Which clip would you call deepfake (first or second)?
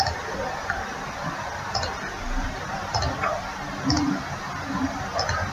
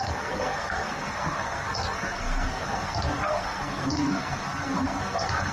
second